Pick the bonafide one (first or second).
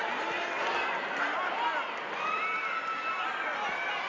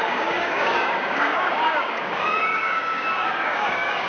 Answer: first